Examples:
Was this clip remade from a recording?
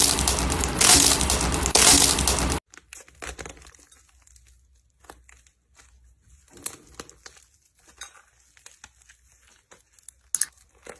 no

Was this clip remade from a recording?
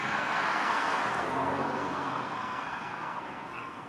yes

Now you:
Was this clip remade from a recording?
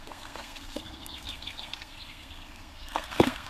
yes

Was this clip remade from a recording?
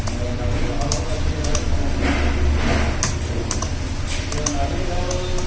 no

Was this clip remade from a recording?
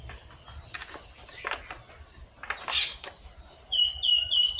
no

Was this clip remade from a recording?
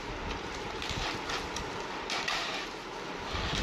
no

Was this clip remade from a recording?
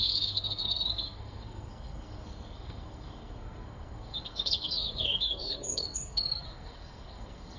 yes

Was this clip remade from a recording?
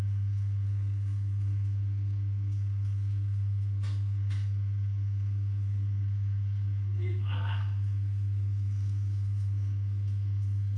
yes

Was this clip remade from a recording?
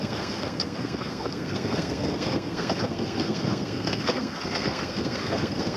yes